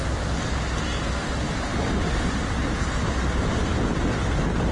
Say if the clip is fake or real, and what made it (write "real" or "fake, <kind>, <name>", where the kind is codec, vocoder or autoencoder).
real